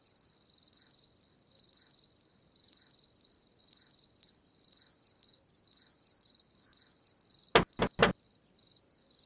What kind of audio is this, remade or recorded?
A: recorded